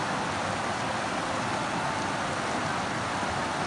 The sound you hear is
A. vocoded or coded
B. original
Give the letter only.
B